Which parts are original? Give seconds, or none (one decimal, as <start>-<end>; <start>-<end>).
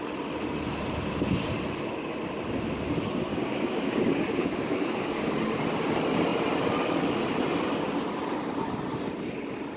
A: 0.0-3.3; 5.3-9.8